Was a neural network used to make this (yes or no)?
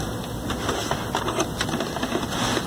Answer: no